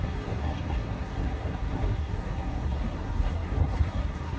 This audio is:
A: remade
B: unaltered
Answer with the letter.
A